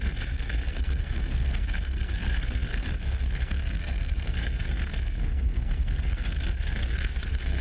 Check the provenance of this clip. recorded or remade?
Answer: remade